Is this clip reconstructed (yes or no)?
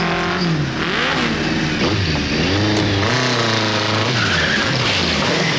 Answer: no